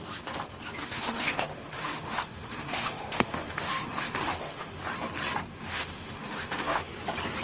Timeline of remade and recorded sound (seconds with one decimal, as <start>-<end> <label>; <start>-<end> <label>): 0.0-0.8 recorded; 0.8-4.8 remade; 4.8-5.5 recorded; 5.5-6.9 remade; 6.9-7.4 recorded